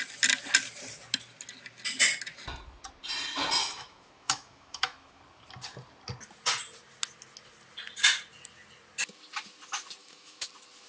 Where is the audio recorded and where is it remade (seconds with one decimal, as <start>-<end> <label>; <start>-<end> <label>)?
0.0-3.6 recorded; 3.6-5.2 remade; 5.2-10.0 recorded; 10.0-10.5 remade; 10.5-10.9 recorded